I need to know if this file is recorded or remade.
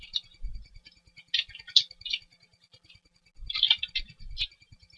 recorded